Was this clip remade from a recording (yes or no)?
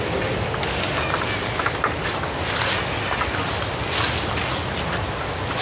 no